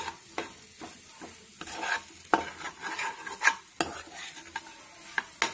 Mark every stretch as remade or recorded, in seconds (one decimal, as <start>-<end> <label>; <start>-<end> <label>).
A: 0.0-5.5 recorded

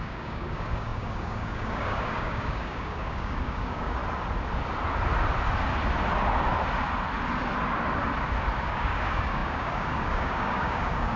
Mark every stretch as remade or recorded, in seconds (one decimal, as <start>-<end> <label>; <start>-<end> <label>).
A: 0.0-4.0 remade; 4.0-8.6 recorded; 8.6-11.2 remade

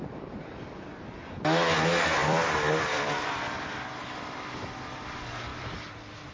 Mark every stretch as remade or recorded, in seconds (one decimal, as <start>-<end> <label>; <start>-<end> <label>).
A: 0.0-2.2 recorded; 2.2-4.2 remade; 4.2-5.5 recorded; 5.5-6.3 remade

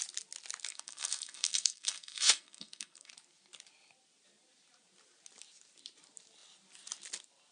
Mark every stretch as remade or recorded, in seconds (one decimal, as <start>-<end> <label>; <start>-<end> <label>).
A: 0.0-0.7 recorded; 0.7-3.1 remade; 3.1-7.5 recorded